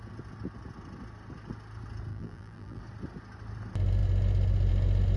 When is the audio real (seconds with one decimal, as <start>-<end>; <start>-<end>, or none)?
0.0-2.1; 2.8-5.2